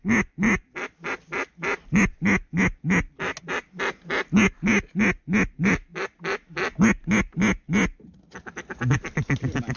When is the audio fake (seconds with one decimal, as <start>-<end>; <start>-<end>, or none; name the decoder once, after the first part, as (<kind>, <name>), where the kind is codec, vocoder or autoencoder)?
none